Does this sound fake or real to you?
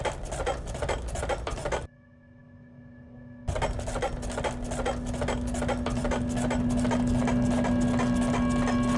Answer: real